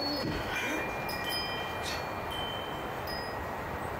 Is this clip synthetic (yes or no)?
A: no